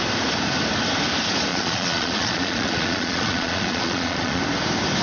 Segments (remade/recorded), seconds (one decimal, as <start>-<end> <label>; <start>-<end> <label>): 0.0-1.5 recorded; 1.5-4.4 remade; 4.4-5.0 recorded